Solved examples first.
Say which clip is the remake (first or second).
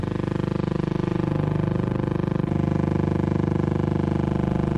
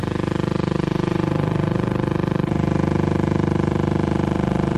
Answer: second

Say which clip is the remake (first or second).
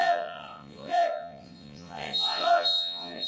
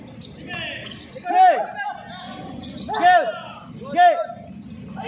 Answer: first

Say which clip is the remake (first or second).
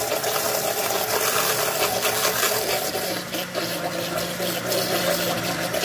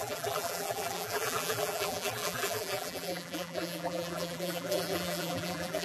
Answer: second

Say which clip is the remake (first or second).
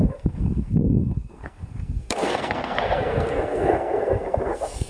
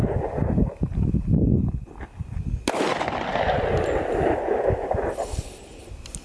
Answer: first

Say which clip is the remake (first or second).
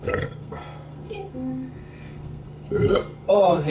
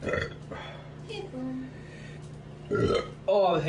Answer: first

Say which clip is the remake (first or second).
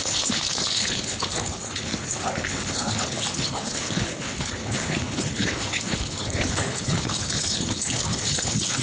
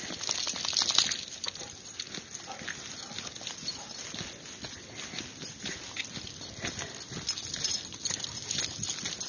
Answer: first